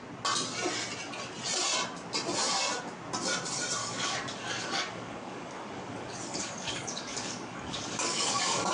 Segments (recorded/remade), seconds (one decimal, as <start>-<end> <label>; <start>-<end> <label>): 0.0-3.8 recorded; 3.8-8.7 remade